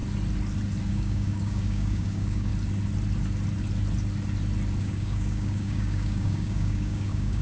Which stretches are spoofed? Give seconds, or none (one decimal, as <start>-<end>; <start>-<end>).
0.9-2.5; 4.8-7.4